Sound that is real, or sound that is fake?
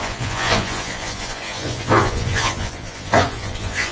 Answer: fake